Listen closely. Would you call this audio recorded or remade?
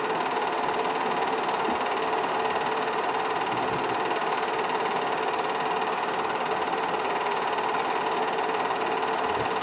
recorded